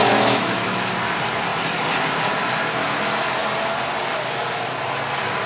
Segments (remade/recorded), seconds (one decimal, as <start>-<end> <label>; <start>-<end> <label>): 0.0-0.9 remade; 0.9-5.5 recorded